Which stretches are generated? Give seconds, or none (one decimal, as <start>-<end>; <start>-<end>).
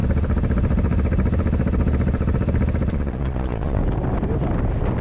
2.9-3.8